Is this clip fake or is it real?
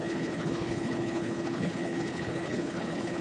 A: fake